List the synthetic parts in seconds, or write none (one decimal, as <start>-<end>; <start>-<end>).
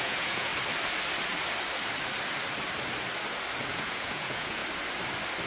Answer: 0.0-0.5; 3.7-4.6